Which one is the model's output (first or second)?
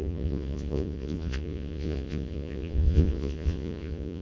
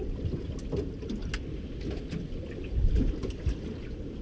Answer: first